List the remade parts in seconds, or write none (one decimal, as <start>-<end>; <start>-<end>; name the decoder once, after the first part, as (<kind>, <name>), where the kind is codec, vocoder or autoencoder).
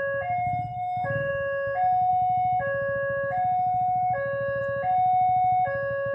0.7-1.3 (autoencoder, DAC-VAE)